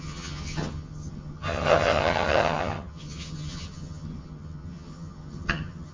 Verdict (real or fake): fake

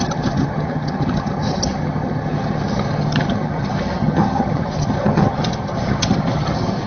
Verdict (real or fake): fake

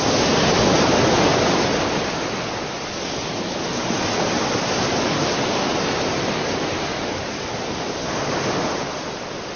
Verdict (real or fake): real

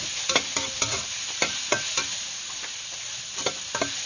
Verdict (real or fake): real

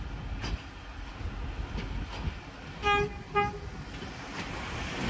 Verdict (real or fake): real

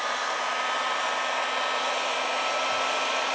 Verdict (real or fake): real